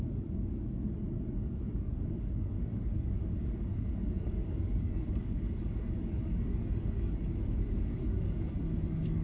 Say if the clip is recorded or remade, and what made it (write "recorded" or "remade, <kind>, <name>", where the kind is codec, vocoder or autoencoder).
remade, codec, DAC